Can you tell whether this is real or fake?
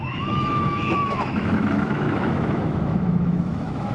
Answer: fake